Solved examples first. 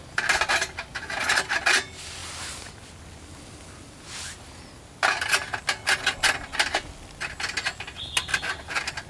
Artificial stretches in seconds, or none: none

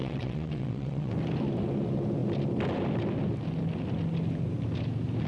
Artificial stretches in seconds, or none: 0.0-1.1 (vocoder, WaveNeXt)

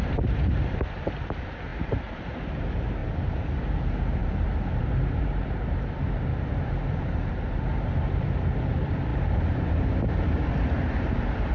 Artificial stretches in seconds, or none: 0.0-11.5 (vocoder, BigVGAN v2)

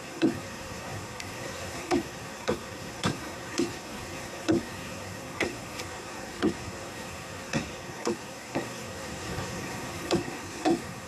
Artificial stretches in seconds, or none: 0.0-11.1 (codec, SNAC)

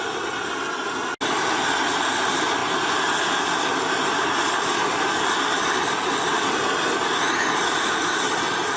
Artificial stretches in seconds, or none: none

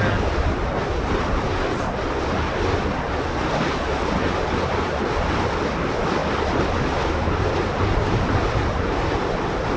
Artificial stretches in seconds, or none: none